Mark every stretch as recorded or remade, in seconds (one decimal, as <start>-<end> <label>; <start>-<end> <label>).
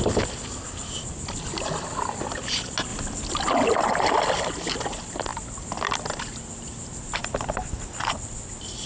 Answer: 0.0-8.9 recorded